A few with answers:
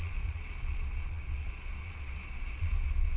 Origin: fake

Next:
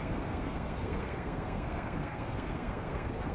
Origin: fake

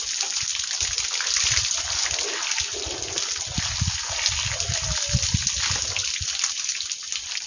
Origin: real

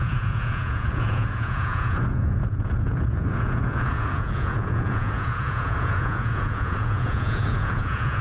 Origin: fake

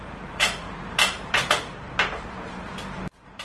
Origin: fake